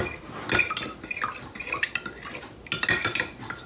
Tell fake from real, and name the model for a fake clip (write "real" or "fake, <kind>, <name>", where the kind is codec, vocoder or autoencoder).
real